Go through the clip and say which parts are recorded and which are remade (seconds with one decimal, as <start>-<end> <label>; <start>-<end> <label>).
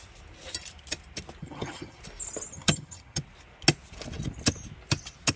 0.0-1.4 recorded; 1.4-2.0 remade; 2.0-2.5 recorded; 2.5-3.2 remade; 3.2-5.4 recorded